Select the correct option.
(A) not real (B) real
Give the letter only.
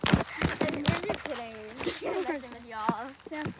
B